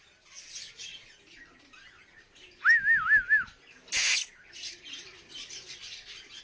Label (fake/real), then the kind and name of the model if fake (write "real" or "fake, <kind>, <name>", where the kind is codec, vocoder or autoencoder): real